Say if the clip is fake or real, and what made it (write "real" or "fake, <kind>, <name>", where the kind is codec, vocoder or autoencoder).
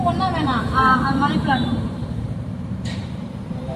fake, vocoder, BigVGAN v2